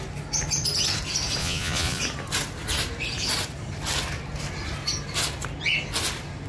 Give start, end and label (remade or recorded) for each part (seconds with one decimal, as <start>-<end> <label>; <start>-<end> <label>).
0.0-1.4 recorded; 1.4-2.0 remade; 2.0-6.5 recorded